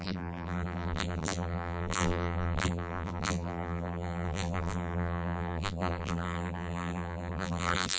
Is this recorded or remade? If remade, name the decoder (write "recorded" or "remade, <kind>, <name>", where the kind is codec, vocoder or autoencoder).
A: remade, vocoder, BigVGAN v2